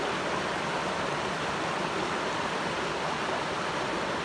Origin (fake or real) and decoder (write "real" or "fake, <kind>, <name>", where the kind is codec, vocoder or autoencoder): real